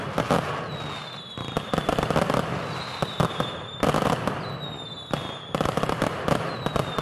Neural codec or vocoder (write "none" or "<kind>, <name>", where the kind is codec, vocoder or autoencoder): none